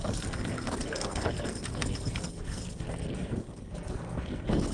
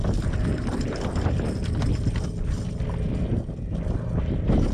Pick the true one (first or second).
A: second